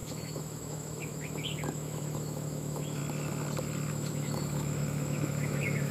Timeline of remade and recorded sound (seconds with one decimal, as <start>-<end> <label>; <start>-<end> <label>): 0.0-3.0 remade; 3.0-3.9 recorded; 3.9-5.9 remade